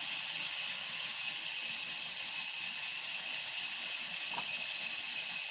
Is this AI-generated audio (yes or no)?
no